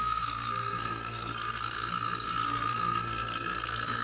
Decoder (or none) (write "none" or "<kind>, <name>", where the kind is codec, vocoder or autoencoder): codec, SNAC